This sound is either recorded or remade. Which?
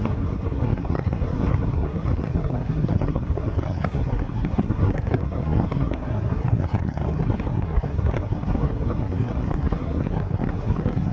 remade